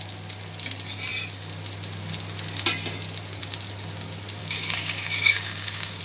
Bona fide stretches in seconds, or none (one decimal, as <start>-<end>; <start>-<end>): 0.0-4.4